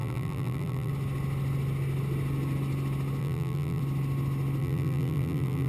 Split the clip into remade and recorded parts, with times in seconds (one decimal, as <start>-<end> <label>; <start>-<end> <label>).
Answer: 0.0-0.9 remade; 0.9-3.2 recorded; 3.2-3.8 remade; 3.8-4.6 recorded; 4.6-5.7 remade